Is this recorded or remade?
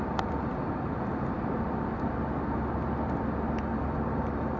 recorded